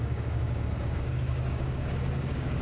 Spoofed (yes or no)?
yes